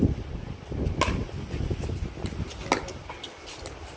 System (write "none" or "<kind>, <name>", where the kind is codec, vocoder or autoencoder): none